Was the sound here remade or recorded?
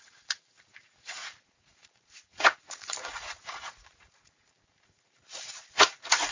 remade